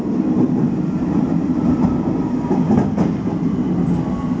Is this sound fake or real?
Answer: real